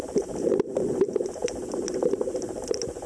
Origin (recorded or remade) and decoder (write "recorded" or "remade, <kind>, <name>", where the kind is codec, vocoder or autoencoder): recorded